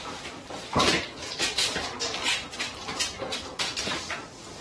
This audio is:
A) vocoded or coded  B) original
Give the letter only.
A